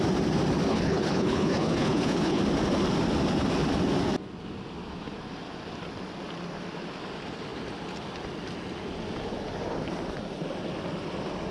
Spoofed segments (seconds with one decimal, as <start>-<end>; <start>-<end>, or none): 0.7-2.4